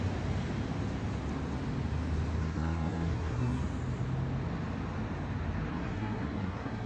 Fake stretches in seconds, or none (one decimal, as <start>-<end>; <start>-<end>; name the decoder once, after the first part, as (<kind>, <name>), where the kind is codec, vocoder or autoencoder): 2.4-3.6 (codec, SNAC); 5.7-6.9